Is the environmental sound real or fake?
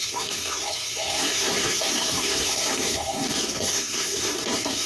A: fake